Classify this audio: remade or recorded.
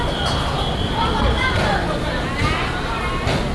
recorded